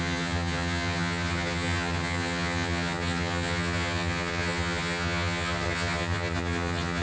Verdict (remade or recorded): remade